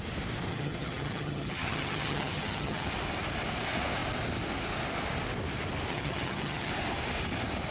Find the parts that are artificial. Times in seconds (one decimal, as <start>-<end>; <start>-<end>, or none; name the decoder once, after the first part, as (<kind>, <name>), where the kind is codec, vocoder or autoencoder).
0.5-2.9 (vocoder, HiFi-GAN); 5.9-6.7